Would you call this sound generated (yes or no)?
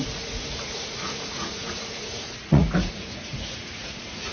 yes